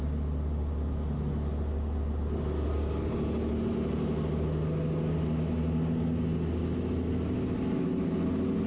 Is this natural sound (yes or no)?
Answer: yes